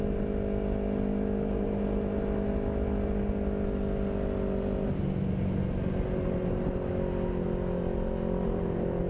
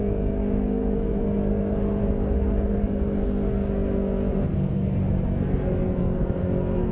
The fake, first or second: second